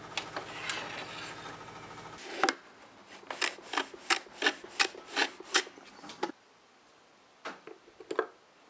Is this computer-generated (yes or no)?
no